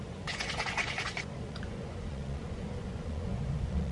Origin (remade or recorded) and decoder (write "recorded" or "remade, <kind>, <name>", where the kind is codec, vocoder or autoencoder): remade, vocoder, Vocos